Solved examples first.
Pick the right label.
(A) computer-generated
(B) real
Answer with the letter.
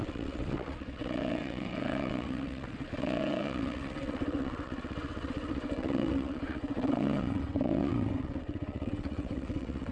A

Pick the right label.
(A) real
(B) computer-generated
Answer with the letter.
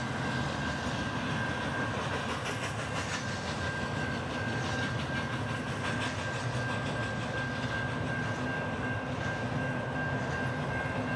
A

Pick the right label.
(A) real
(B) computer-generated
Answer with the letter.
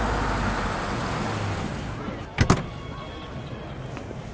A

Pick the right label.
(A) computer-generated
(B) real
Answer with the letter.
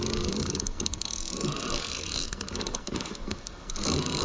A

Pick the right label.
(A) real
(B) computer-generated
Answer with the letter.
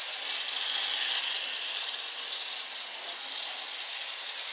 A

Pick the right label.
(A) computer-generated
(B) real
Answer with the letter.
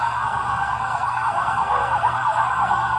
A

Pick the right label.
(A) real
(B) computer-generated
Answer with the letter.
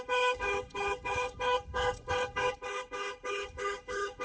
B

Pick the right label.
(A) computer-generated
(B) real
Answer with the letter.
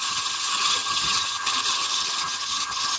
A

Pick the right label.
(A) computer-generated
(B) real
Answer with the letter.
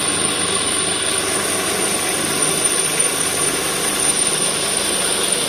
B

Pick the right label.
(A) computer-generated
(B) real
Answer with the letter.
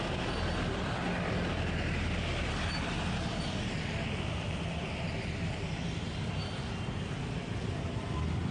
B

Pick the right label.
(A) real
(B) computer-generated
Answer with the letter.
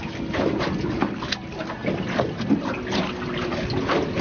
A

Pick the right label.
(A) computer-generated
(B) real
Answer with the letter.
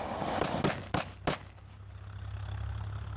B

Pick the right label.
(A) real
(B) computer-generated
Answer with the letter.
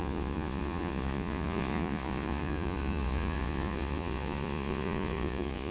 B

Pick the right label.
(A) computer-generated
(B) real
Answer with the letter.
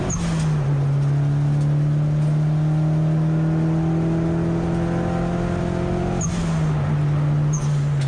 B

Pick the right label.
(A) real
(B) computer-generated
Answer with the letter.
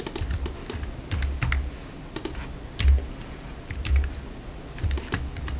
A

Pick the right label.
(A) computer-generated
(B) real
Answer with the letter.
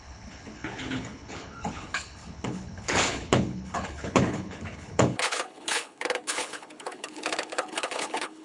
A